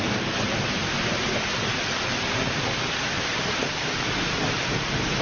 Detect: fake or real real